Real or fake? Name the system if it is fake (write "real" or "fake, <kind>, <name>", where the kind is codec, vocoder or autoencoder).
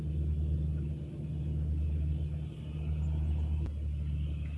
real